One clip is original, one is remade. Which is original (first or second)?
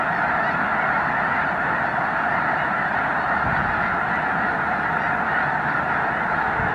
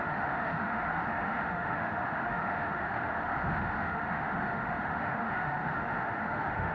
first